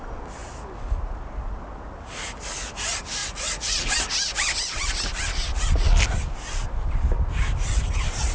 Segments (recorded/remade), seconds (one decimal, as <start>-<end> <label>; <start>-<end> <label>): 0.0-3.2 recorded; 3.2-3.9 remade; 3.9-8.3 recorded